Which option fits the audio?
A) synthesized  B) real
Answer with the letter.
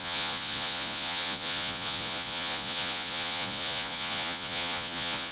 A